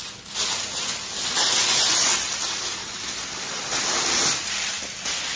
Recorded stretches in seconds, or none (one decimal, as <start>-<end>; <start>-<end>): 0.0-1.6; 2.1-5.4